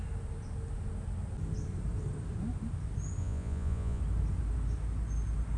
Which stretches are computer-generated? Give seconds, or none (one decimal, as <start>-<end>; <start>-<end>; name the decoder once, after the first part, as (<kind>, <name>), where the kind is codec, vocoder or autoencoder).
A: 3.2-4.0 (vocoder, Vocos)